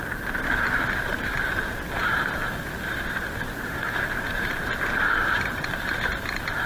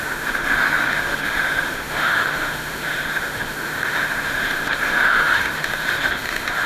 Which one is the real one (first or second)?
first